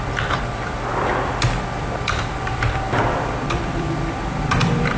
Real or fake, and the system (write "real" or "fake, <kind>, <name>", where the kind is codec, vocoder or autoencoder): fake, vocoder, BigVGAN v2